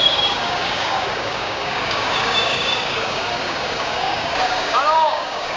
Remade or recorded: remade